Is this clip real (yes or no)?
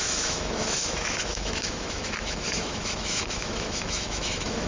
no